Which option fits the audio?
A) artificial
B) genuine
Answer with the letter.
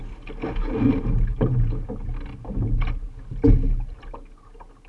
B